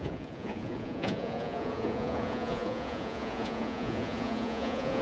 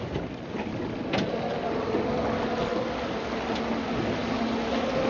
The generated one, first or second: first